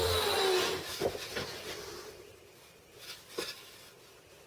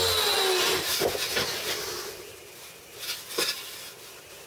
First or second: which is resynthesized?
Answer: first